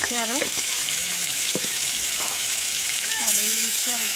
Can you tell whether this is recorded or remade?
remade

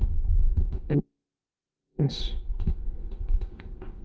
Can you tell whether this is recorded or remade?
remade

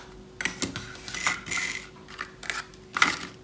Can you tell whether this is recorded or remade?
recorded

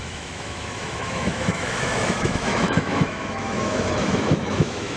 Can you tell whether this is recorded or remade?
remade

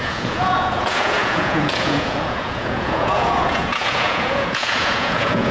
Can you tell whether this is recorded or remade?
remade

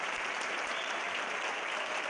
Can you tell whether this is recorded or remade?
remade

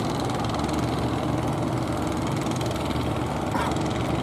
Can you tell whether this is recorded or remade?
recorded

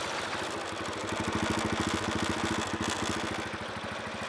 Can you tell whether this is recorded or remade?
recorded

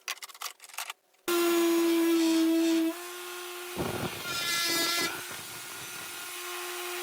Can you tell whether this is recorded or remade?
recorded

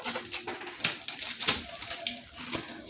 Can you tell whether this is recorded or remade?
recorded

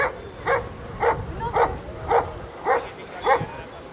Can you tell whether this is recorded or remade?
recorded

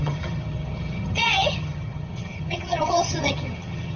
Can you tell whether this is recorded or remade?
remade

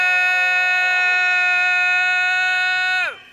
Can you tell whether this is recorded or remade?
recorded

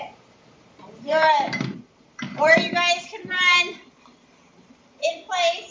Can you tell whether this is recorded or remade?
remade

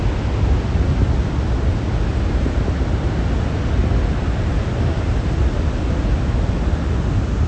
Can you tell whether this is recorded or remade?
recorded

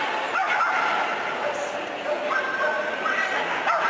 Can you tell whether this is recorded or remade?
recorded